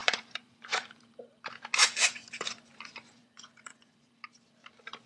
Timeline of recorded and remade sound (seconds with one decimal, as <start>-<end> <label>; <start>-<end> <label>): 0.0-1.0 remade; 1.0-1.8 recorded; 1.8-4.1 remade; 4.1-5.1 recorded